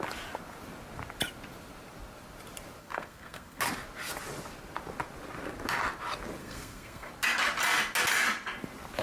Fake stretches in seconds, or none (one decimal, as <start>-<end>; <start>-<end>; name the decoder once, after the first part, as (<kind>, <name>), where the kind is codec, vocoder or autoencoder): 2.8-3.6 (codec, SNAC); 6.4-7.1